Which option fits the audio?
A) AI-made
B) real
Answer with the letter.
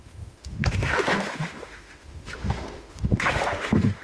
A